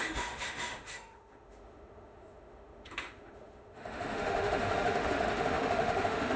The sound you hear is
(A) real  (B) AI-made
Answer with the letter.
B